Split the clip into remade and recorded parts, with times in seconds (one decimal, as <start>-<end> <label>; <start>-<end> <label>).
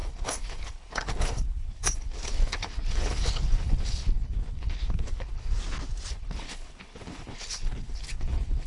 0.0-5.5 remade; 5.5-6.1 recorded; 6.1-8.7 remade